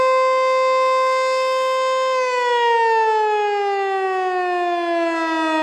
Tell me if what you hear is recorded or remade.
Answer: recorded